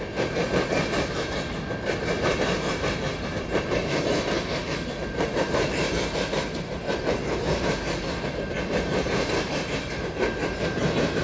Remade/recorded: remade